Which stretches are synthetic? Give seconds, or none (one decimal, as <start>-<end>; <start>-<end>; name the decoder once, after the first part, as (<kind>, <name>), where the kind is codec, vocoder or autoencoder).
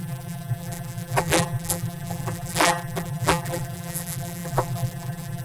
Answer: 0.0-5.4 (vocoder, BigVGAN v2)